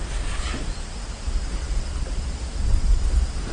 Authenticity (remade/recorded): recorded